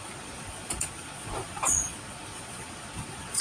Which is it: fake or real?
fake